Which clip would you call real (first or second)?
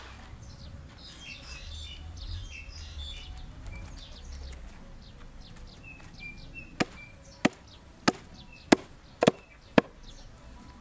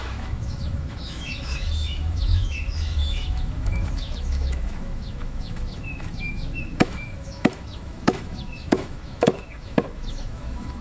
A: first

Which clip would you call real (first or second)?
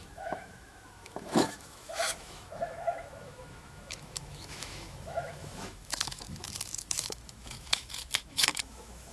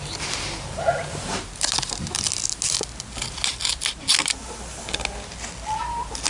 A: second